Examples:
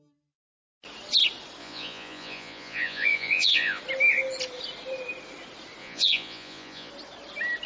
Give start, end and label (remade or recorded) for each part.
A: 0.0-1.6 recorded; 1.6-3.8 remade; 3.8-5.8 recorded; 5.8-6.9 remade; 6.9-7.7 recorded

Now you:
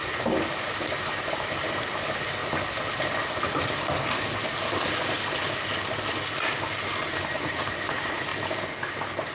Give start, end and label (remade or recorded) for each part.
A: 0.0-2.4 remade; 2.4-7.2 recorded; 7.2-8.3 remade; 8.3-9.3 recorded

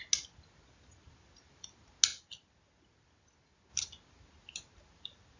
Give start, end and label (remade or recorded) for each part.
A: 0.0-5.4 recorded

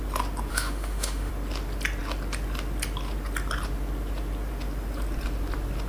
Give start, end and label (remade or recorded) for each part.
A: 0.0-0.5 recorded; 0.5-1.3 remade; 1.3-5.9 recorded

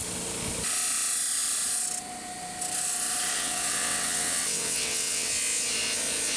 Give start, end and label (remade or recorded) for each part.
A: 0.0-3.3 recorded; 3.3-5.3 remade; 5.3-6.4 recorded

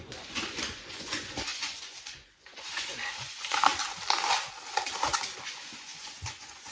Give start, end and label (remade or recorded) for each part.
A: 0.0-3.7 remade; 3.7-5.4 recorded; 5.4-6.7 remade